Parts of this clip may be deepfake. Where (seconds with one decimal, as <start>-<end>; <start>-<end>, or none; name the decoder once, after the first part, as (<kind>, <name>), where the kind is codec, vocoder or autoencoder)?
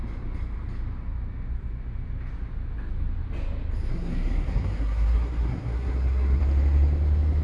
3.9-6.4 (codec, SNAC)